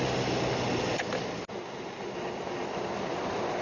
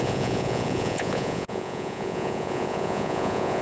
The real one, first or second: first